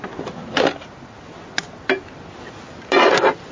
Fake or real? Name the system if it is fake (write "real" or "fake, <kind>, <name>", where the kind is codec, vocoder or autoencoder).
real